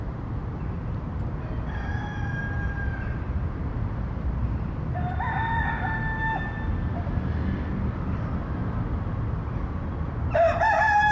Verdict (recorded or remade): recorded